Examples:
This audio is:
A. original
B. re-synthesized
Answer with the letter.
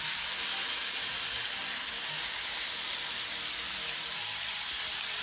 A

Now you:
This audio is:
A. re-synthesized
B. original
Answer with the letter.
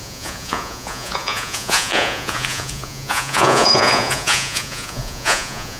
A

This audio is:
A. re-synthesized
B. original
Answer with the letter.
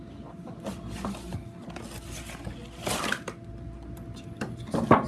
B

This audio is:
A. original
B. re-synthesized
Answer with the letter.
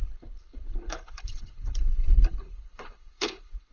B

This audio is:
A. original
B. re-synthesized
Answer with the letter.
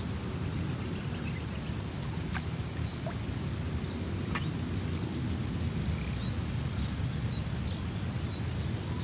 A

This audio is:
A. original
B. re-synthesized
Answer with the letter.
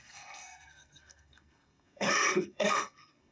B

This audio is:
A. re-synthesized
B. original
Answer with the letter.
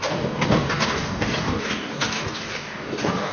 A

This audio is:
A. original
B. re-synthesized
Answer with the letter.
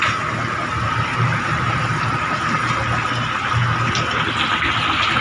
A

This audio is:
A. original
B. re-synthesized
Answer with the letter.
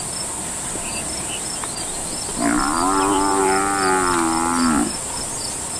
A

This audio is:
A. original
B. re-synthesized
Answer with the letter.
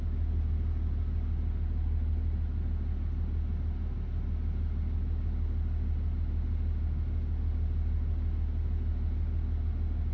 A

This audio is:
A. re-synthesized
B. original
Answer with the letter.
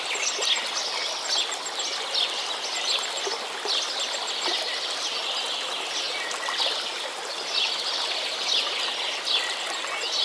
B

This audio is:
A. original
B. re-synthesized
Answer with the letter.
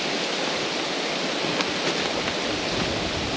A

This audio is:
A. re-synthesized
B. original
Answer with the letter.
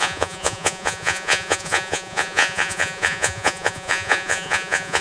A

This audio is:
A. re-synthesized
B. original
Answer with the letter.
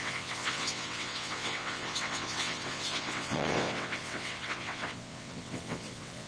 A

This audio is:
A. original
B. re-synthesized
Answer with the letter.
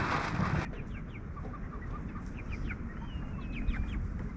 A